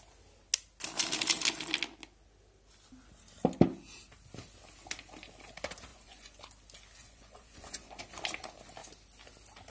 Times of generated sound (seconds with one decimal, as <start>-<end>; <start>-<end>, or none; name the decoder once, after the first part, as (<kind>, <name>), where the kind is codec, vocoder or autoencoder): 5.9-6.4 (vocoder, Vocos); 7.0-8.0